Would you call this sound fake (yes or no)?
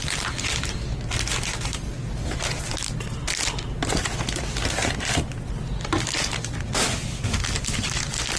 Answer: no